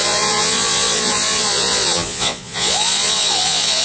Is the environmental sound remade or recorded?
remade